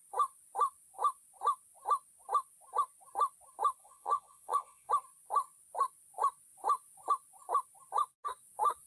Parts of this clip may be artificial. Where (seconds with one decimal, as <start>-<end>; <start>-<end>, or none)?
3.8-4.9